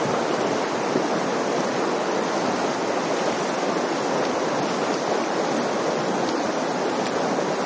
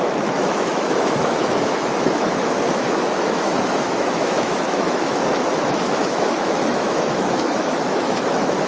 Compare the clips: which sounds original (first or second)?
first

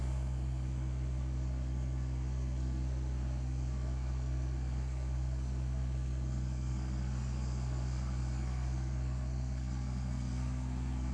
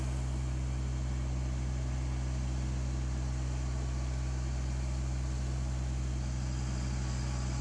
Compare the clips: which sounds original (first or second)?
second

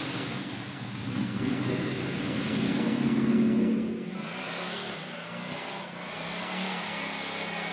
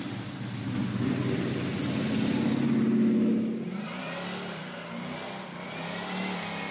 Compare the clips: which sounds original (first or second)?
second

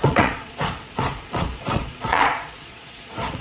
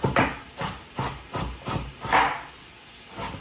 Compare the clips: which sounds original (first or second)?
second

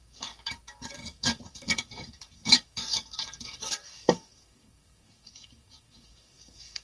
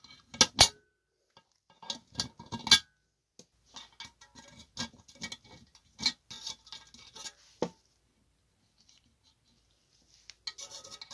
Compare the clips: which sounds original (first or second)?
second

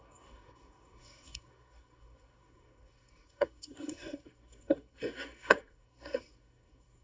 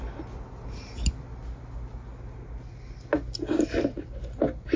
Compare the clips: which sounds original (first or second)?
second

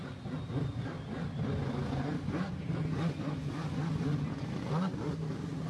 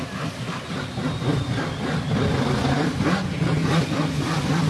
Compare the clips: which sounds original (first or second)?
first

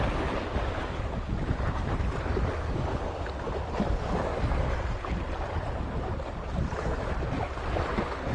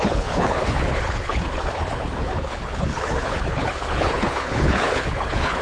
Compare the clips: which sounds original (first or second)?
first